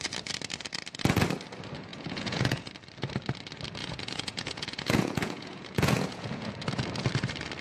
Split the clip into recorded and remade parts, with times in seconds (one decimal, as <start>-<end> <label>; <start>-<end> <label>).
0.0-1.9 recorded; 1.9-2.7 remade; 2.7-3.8 recorded; 3.8-6.5 remade; 6.5-7.6 recorded